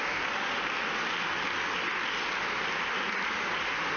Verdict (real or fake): real